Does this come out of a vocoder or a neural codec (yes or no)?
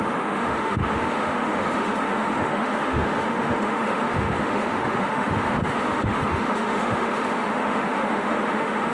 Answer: yes